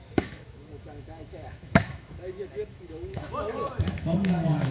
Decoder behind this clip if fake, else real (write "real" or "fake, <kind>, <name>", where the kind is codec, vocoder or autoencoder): fake, autoencoder, DAC-VAE